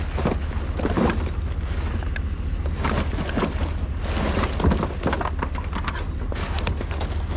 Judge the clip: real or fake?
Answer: real